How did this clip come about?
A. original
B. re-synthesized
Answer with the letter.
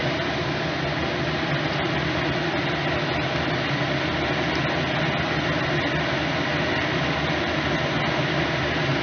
A